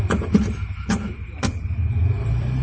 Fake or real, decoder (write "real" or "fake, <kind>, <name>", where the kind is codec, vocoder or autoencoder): fake, vocoder, BigVGAN v2